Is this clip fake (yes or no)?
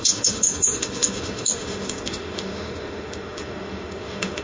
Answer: yes